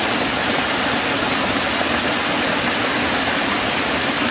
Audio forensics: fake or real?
real